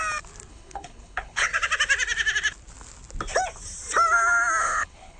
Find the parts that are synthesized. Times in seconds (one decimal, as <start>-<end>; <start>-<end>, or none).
0.5-1.5; 4.6-5.2